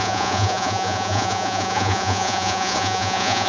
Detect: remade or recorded remade